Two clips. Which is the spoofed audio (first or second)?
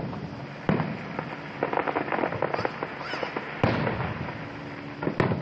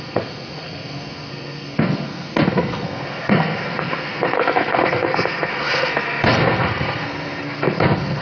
second